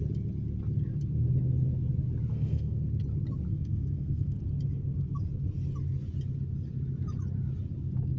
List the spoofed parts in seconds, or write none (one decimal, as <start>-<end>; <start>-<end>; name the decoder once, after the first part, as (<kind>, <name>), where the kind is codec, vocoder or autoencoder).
2.3-2.8 (codec, SNAC); 3.5-4.4